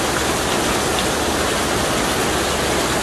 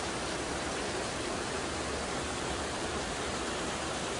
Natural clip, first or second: first